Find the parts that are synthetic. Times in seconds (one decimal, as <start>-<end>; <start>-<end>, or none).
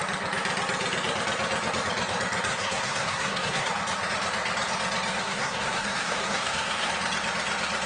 2.5-3.7; 5.2-6.9